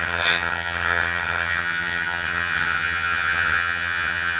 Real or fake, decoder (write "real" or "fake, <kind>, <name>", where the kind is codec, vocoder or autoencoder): fake, vocoder, HiFi-GAN